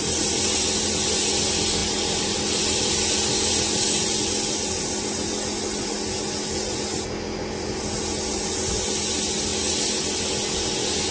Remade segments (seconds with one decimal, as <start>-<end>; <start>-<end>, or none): none